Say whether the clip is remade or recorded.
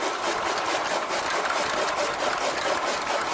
recorded